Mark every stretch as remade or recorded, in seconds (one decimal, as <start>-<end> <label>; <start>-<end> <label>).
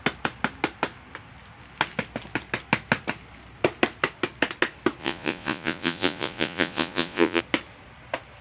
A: 0.0-5.0 recorded; 5.0-7.4 remade; 7.4-8.4 recorded